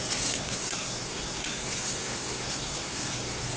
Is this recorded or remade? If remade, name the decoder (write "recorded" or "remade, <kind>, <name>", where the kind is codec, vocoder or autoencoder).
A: remade, codec, SNAC